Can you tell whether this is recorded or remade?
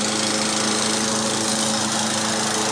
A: recorded